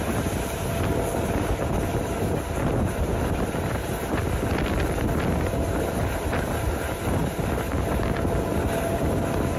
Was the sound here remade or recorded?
recorded